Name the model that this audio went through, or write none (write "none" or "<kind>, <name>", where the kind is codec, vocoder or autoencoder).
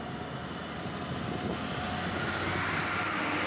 none